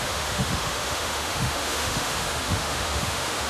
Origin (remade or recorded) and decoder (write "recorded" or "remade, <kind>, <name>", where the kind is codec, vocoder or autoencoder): remade, autoencoder, DAC-VAE